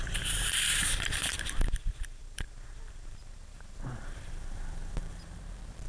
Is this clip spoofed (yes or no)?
yes